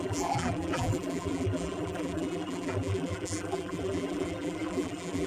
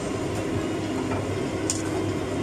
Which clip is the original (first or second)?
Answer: second